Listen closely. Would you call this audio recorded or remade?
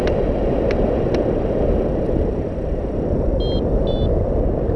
recorded